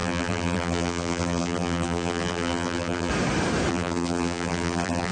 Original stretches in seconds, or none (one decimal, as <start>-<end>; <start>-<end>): 3.1-3.7